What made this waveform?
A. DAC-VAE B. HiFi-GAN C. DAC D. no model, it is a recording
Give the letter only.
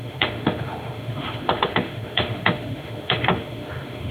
A